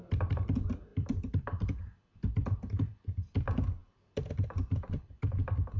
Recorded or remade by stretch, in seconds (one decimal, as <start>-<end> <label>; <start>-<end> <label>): 0.0-5.8 recorded